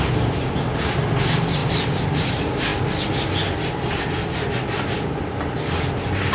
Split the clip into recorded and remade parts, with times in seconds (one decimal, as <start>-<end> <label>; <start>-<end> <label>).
0.0-6.3 recorded